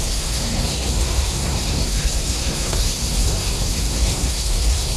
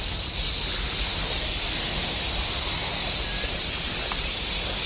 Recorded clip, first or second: second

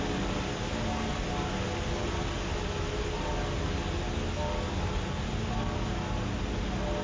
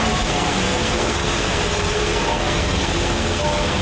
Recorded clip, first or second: first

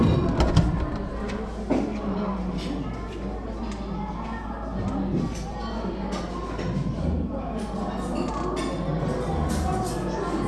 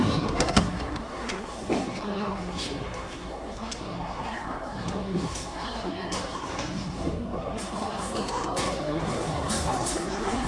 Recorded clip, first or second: first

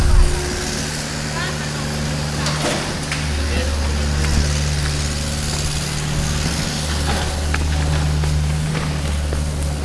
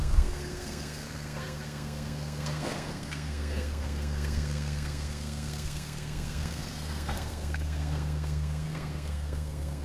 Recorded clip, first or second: first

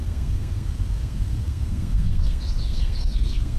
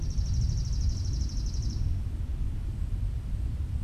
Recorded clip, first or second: second